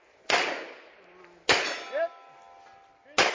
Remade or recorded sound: recorded